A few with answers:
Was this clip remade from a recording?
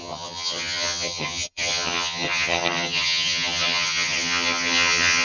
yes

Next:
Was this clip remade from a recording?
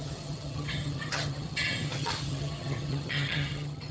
yes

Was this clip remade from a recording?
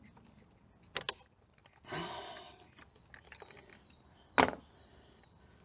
no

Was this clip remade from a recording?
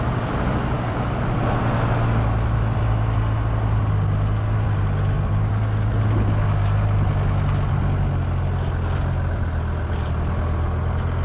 no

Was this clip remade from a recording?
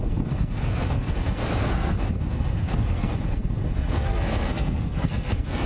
yes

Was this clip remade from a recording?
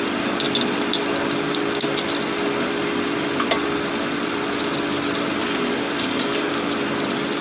no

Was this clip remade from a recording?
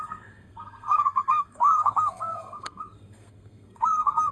yes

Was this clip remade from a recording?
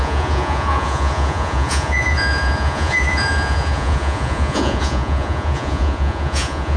yes